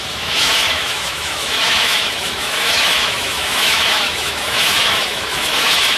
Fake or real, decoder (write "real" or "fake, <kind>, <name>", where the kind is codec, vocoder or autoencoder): fake, autoencoder, DAC-VAE